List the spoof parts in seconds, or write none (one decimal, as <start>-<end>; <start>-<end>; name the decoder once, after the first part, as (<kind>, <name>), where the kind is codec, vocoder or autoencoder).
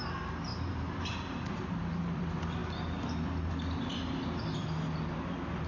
0.5-2.2 (vocoder, BigVGAN v2)